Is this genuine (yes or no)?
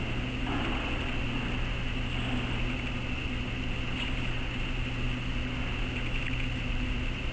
yes